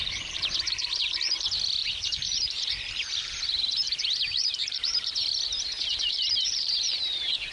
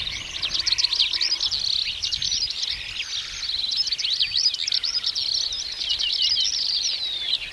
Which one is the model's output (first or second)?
first